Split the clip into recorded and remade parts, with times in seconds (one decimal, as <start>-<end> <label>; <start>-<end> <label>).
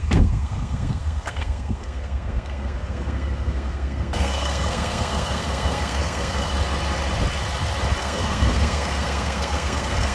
0.0-6.5 remade; 6.5-8.0 recorded; 8.0-10.1 remade